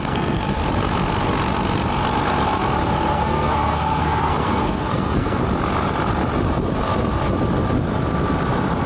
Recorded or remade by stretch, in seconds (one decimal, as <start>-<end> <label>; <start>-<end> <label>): 0.0-0.6 remade; 0.6-3.1 recorded; 3.1-5.4 remade; 5.4-8.9 recorded